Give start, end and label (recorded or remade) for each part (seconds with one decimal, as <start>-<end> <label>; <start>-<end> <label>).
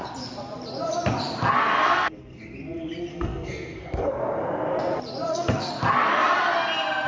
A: 0.0-1.6 recorded; 1.6-2.4 remade; 2.4-3.1 recorded; 3.1-4.2 remade; 4.2-5.3 recorded; 5.3-5.8 remade; 5.8-7.1 recorded